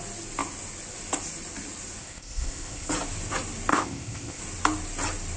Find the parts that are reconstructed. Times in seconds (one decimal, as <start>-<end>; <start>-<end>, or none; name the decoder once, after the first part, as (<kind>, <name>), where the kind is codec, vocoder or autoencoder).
2.0-2.9 (codec, ZipCodec); 3.7-4.4